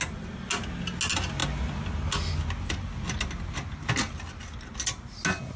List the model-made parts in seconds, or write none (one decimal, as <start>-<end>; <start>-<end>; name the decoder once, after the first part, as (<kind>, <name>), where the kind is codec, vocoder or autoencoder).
none